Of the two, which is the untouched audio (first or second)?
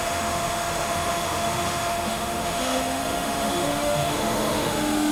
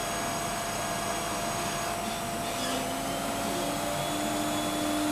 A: second